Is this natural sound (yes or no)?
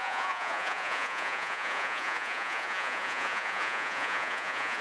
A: no